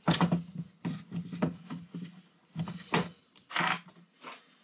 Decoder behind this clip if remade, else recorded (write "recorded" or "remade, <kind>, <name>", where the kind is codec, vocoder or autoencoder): recorded